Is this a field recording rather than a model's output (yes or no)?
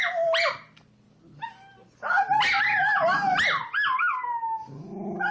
yes